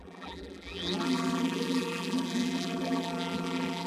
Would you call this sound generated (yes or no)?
yes